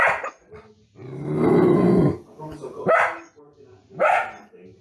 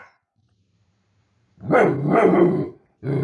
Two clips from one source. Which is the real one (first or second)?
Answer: first